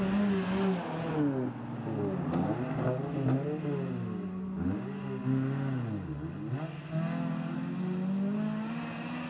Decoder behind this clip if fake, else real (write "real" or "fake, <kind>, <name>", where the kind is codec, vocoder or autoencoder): real